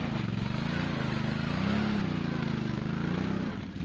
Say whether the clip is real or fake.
real